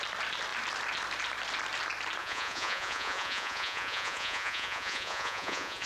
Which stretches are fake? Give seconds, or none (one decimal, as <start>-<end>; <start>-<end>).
2.2-5.9